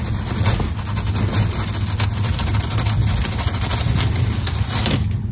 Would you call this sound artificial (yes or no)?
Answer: no